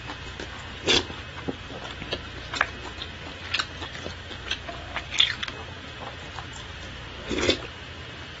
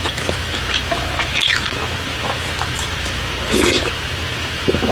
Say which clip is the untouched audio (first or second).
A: first